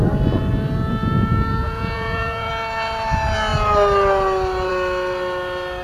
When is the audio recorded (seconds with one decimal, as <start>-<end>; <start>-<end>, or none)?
0.0-1.6; 2.5-5.8